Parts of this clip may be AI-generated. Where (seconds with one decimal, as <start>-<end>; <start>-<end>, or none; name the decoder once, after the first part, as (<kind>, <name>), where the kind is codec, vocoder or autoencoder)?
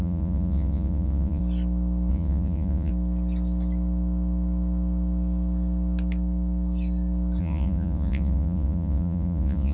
0.0-1.4 (vocoder, Vocos); 2.1-2.9; 7.4-9.7